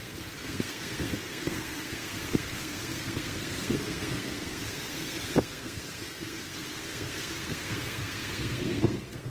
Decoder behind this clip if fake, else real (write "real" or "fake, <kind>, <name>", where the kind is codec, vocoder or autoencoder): fake, codec, SNAC